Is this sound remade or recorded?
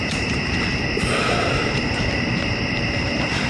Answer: remade